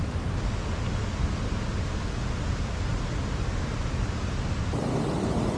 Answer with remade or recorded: recorded